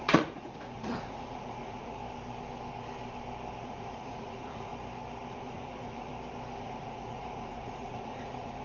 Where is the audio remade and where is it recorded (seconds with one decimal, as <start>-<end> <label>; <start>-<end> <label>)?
0.0-2.0 remade; 2.0-3.6 recorded; 3.6-4.7 remade; 4.7-5.3 recorded; 5.3-6.1 remade; 6.1-6.6 recorded; 6.6-8.6 remade